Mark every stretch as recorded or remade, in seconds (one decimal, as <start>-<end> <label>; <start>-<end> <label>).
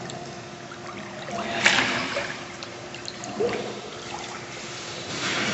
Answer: 0.0-2.0 recorded; 2.0-5.5 remade